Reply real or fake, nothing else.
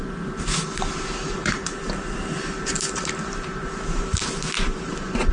fake